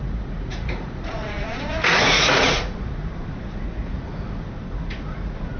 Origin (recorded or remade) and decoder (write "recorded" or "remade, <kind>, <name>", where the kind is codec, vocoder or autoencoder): remade, vocoder, Vocos